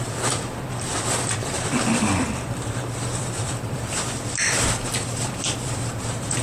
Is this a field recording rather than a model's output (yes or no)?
no